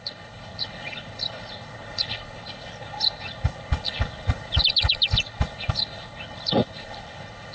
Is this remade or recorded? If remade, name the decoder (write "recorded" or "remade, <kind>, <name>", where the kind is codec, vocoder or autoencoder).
remade, codec, HILCodec